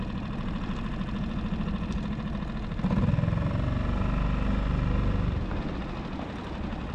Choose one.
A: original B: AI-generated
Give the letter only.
A